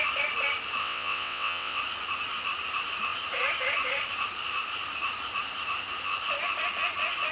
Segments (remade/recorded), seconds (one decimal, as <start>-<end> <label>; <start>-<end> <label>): 0.0-0.8 recorded; 0.8-1.8 remade; 1.8-7.3 recorded